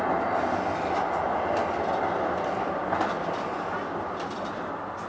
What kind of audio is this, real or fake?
real